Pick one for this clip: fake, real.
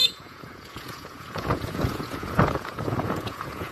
fake